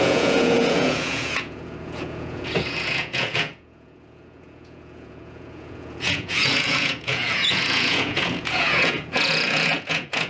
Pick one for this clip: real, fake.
fake